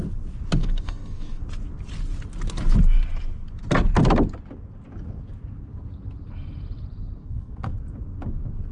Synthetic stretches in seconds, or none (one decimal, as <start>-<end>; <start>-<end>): 0.6-1.4; 7.2-7.7